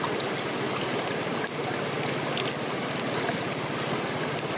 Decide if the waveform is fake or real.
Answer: real